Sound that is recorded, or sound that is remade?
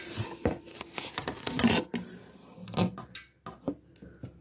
recorded